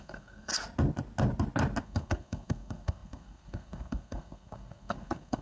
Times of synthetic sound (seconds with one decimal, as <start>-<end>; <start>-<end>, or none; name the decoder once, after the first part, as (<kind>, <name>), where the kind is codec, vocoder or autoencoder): 0.0-0.5 (codec, SNAC); 1.8-5.4